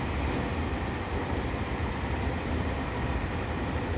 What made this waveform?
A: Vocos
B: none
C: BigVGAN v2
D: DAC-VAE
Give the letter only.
B